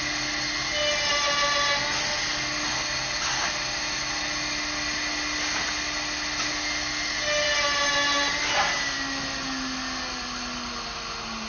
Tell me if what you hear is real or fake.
real